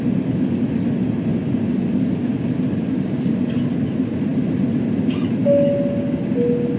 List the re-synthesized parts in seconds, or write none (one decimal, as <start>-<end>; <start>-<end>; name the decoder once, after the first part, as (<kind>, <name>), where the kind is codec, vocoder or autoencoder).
none